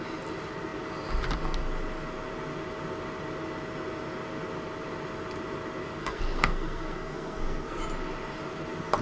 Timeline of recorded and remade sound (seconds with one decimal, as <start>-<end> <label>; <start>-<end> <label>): 0.0-6.0 recorded; 6.0-7.8 remade; 7.8-9.0 recorded